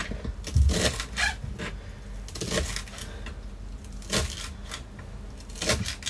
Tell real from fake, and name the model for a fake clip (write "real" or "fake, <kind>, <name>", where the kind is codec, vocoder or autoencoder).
real